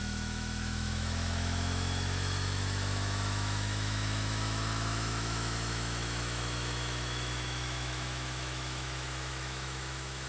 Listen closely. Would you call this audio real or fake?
fake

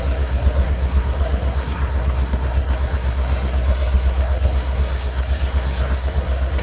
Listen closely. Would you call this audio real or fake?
fake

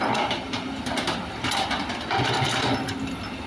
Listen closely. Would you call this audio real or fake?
fake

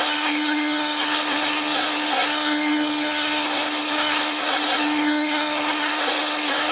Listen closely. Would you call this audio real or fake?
fake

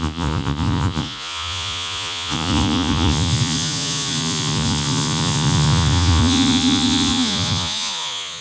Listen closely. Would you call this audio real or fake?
fake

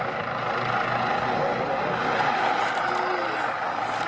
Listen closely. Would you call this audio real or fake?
real